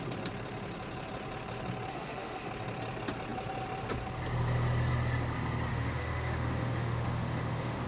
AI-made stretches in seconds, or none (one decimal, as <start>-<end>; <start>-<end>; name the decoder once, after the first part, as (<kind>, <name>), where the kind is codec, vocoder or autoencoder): 1.9-2.5 (autoencoder, DAC-VAE); 5.7-7.9